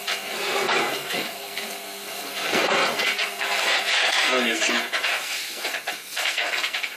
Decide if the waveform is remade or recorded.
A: remade